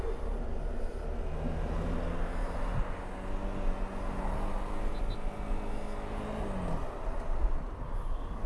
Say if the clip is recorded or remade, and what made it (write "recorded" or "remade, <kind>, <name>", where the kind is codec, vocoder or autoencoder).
recorded